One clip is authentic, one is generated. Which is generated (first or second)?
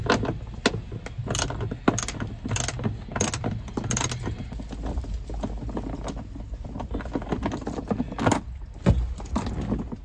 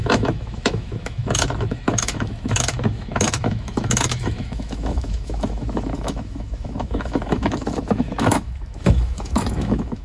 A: second